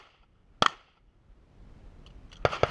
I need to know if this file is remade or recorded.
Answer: recorded